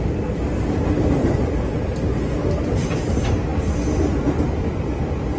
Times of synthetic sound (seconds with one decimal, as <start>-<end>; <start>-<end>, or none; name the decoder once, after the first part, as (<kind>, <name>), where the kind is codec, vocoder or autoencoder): none